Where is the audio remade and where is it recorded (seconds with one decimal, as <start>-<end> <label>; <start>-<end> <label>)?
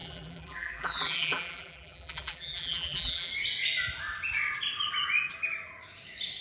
0.0-3.3 remade; 3.3-6.4 recorded